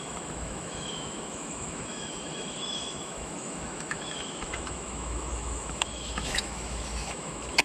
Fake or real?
fake